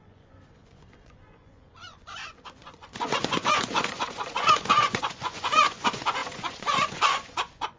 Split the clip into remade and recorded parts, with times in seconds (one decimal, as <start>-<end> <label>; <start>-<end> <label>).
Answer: 0.0-7.8 remade

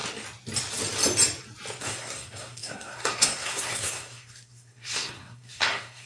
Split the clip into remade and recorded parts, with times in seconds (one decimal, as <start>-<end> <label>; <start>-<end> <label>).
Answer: 0.0-1.8 recorded; 1.8-6.1 remade

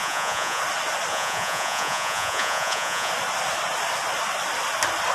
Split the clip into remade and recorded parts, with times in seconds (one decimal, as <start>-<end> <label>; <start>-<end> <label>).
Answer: 0.0-0.6 remade; 0.6-1.1 recorded; 1.1-3.1 remade; 3.1-5.1 recorded

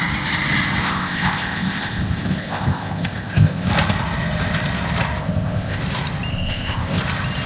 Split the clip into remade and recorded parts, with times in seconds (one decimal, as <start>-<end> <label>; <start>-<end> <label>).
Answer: 0.0-0.8 recorded; 0.8-3.7 remade; 3.7-5.2 recorded; 5.2-5.8 remade; 5.8-6.3 recorded; 6.3-7.0 remade; 7.0-7.5 recorded

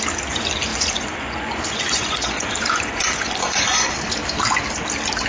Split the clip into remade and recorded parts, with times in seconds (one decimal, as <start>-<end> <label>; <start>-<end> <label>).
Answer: 0.0-0.7 recorded; 0.7-3.9 remade; 3.9-5.3 recorded